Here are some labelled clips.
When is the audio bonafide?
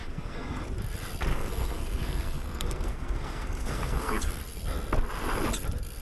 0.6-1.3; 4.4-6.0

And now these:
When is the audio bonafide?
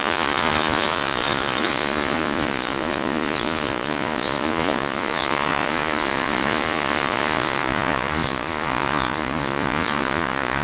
none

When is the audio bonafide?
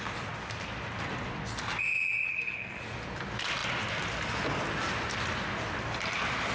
0.0-2.3; 2.8-6.5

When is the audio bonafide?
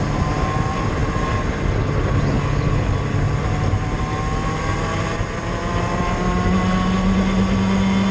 0.0-8.1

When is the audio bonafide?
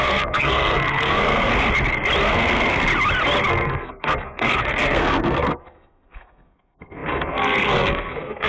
1.5-2.3; 2.9-3.5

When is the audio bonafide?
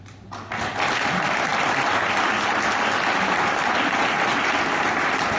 0.0-5.4